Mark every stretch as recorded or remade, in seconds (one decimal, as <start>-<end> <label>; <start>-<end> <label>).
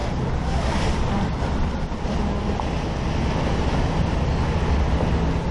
0.0-5.5 recorded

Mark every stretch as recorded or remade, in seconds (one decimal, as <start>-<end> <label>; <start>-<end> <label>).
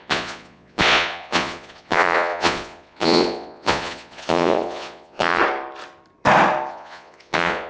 0.0-5.4 remade; 5.4-6.7 recorded; 6.7-7.7 remade